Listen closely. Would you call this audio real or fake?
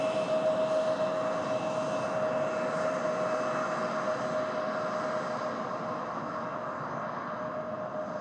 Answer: real